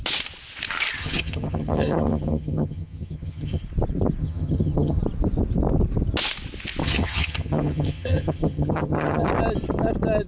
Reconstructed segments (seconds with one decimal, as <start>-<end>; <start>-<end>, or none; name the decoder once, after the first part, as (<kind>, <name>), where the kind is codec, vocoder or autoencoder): 1.0-3.6 (vocoder, HiFi-GAN); 4.2-5.0; 6.8-9.3